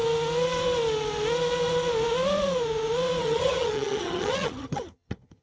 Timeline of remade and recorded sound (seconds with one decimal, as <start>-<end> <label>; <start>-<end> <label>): 0.0-3.2 recorded; 3.2-5.4 remade